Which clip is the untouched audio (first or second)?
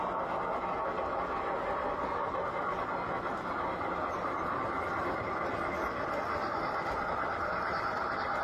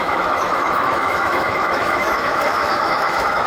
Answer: first